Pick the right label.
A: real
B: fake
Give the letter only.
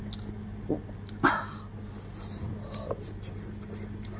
A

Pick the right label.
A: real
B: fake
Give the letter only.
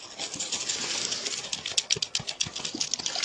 A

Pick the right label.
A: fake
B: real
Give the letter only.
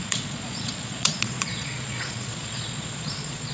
A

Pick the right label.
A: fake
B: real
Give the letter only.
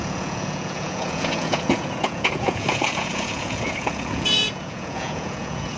A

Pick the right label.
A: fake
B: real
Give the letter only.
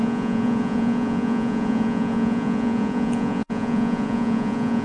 A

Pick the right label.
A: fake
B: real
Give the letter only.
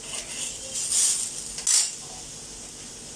B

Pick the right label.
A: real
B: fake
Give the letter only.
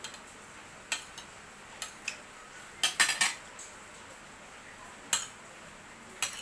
A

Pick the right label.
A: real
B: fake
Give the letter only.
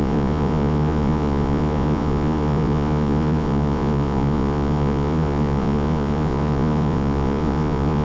B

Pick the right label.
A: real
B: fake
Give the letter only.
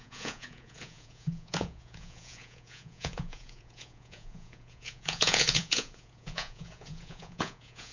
B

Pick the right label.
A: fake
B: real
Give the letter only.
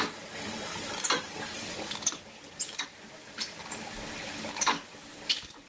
B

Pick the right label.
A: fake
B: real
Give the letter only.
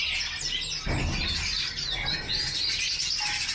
B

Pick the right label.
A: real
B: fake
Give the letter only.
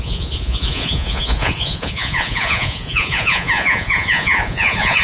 B